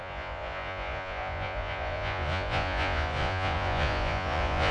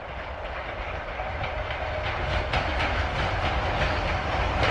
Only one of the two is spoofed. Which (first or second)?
first